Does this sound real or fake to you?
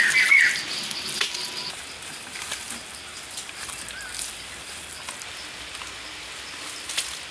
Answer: real